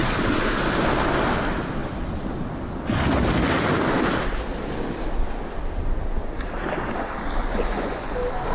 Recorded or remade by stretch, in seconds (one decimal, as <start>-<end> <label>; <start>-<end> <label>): 0.0-7.4 recorded; 7.4-8.1 remade; 8.1-8.5 recorded